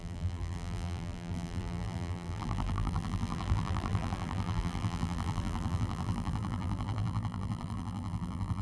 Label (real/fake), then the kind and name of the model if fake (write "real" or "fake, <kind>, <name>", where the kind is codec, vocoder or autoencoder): fake, vocoder, BigVGAN v2